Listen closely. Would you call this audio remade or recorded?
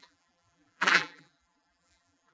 remade